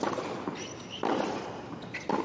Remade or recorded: recorded